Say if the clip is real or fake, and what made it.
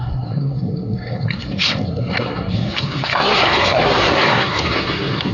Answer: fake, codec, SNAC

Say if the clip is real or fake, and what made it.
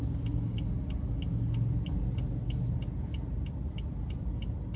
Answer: real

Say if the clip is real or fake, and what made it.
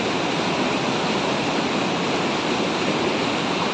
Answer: real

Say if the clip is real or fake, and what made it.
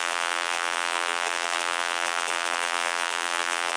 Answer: fake, vocoder, BigVGAN v2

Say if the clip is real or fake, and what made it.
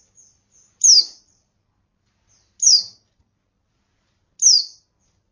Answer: real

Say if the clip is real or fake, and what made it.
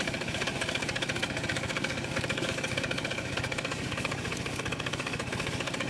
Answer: fake, codec, DAC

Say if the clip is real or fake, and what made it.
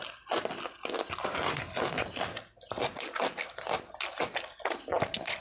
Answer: real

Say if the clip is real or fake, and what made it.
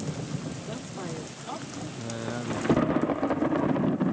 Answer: real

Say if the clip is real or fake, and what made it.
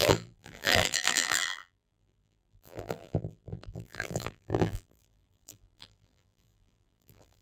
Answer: fake, vocoder, BigVGAN v2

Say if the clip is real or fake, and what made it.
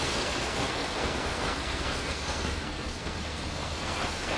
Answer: fake, codec, SNAC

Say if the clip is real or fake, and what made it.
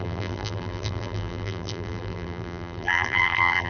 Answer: fake, vocoder, BigVGAN v2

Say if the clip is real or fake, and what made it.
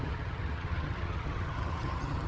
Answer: fake, vocoder, HiFi-GAN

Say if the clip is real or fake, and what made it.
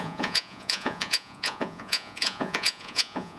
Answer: fake, vocoder, Vocos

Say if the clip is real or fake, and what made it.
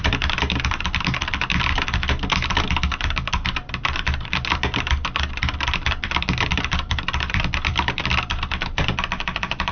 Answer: fake, vocoder, BigVGAN v2